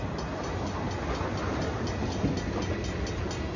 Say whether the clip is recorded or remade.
recorded